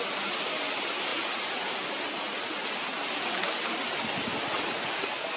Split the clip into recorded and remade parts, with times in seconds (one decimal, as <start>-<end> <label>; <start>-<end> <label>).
0.0-5.4 recorded